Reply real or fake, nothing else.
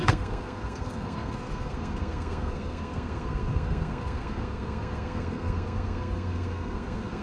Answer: fake